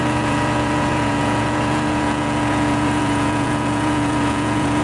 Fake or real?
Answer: fake